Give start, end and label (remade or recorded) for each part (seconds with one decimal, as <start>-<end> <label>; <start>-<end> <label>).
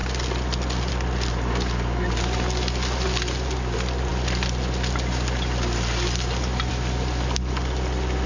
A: 0.0-8.3 recorded